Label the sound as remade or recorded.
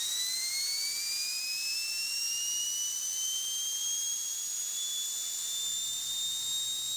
remade